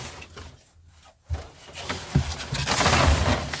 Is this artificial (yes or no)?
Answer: no